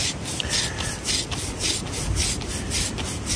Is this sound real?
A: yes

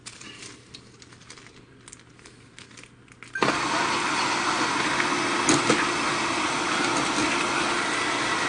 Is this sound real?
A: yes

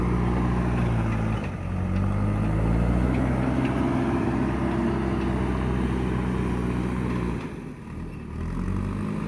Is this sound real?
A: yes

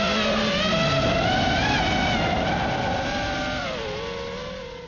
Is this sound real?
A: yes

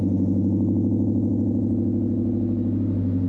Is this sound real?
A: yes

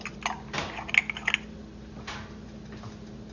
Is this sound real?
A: yes